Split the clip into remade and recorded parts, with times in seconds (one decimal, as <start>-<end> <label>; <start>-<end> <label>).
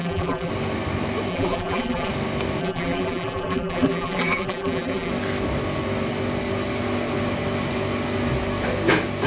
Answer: 0.0-0.5 remade; 0.5-1.3 recorded; 1.3-2.1 remade; 2.1-2.6 recorded; 2.6-5.1 remade; 5.1-9.3 recorded